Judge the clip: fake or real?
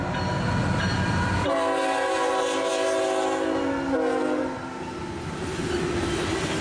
real